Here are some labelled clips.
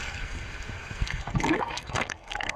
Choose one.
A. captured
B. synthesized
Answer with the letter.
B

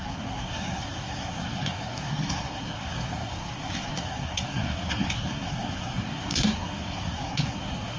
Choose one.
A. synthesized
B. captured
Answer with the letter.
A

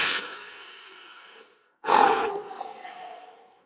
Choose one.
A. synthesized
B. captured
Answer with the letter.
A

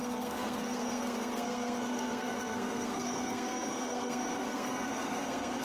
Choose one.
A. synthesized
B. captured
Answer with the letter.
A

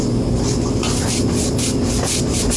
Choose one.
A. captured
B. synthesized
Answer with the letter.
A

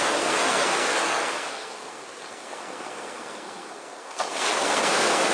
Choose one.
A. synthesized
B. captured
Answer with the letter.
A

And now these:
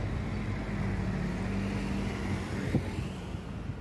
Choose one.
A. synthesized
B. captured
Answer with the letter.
B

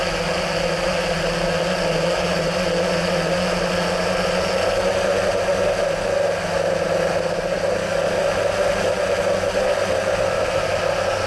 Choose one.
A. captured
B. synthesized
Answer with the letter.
A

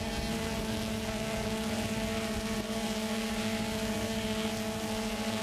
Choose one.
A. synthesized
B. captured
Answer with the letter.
A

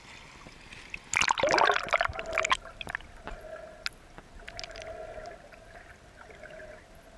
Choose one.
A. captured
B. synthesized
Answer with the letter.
A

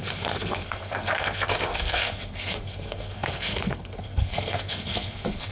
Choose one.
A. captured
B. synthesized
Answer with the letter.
B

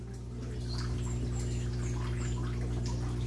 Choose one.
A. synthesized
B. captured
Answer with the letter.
B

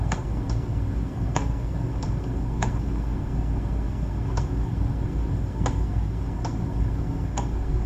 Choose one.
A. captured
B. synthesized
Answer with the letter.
B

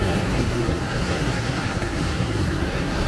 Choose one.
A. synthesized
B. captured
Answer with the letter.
A